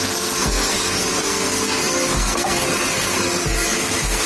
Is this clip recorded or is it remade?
remade